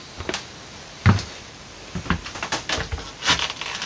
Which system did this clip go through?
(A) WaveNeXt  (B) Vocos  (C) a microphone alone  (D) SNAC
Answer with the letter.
C